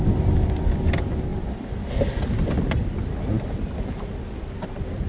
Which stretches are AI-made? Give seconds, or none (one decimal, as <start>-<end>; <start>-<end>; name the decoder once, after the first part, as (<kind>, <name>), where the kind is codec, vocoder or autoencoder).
1.3-1.9 (vocoder, BigVGAN v2)